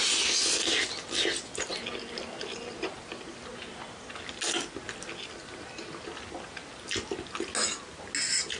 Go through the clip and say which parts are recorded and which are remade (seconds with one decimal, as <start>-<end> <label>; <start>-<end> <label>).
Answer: 0.0-8.6 recorded